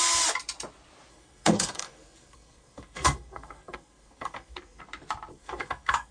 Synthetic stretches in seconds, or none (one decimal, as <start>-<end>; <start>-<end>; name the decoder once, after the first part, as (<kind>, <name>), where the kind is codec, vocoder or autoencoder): 1.1-4.8 (codec, SNAC); 5.3-6.1